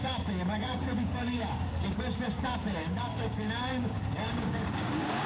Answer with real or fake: fake